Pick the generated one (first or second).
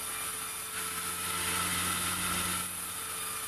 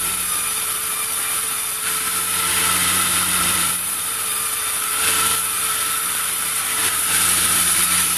second